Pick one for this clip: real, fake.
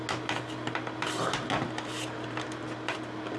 real